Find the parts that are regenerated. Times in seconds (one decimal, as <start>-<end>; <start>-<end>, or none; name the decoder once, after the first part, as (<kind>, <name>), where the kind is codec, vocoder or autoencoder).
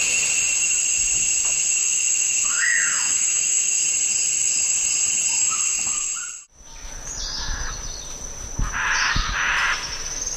1.8-3.8 (autoencoder, DAC-VAE); 5.4-6.1